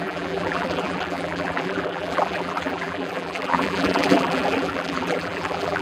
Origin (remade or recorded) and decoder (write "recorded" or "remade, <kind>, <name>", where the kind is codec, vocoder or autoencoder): remade, vocoder, BigVGAN v2